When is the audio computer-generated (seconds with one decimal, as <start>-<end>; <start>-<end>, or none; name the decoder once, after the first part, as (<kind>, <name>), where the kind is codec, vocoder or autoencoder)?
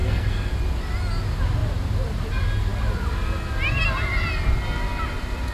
0.0-0.5 (codec, SNAC)